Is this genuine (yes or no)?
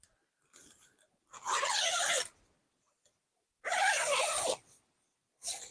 yes